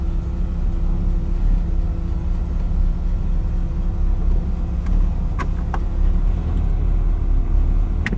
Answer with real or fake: real